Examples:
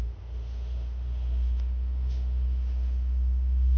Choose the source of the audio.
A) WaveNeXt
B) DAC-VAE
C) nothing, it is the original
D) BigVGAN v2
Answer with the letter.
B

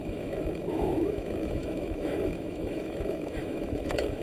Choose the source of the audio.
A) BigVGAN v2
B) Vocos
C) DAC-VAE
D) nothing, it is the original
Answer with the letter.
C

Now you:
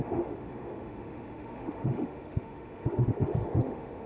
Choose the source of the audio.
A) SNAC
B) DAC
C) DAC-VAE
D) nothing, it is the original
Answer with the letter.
C